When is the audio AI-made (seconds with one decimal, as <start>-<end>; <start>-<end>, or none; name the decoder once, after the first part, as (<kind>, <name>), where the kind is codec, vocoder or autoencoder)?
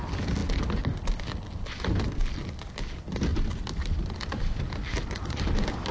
none